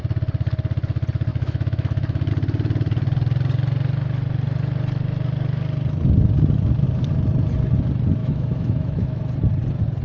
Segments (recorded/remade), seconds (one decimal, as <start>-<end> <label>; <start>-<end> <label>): 0.0-1.3 recorded; 1.3-2.3 remade; 2.3-8.2 recorded; 8.2-9.2 remade; 9.2-10.0 recorded